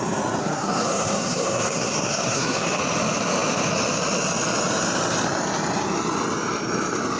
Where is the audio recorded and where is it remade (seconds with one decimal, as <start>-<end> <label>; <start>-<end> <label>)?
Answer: 0.0-0.4 recorded; 0.4-2.8 remade; 2.8-7.2 recorded